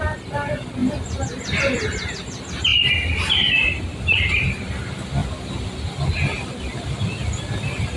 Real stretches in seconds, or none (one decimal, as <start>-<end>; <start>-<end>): 0.0-8.0